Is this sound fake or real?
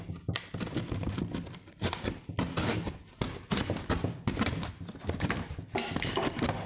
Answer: real